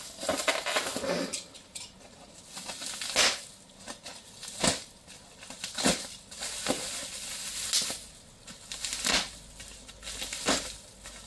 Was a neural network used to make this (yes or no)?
no